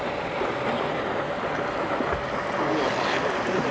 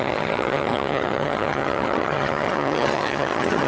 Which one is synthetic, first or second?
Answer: second